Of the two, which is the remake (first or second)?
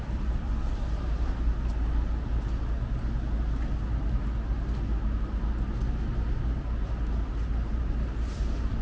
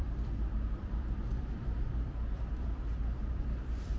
second